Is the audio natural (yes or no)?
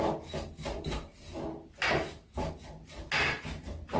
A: yes